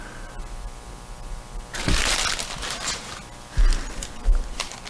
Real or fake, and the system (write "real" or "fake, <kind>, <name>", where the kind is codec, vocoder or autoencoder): real